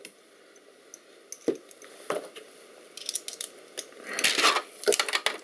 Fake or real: real